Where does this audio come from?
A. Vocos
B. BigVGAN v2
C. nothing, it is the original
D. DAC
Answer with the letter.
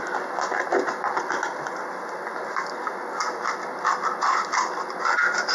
C